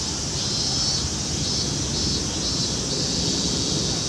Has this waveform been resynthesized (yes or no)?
no